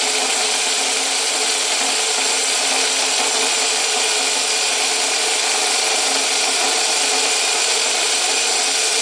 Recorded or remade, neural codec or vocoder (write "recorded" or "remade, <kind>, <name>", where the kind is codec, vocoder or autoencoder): recorded